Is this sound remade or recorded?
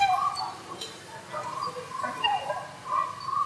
recorded